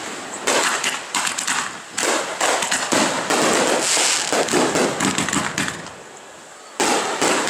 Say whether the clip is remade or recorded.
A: recorded